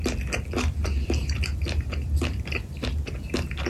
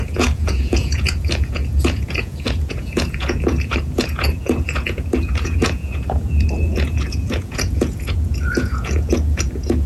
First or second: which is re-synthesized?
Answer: second